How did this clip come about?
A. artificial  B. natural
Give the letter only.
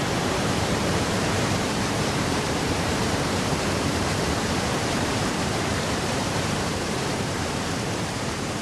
A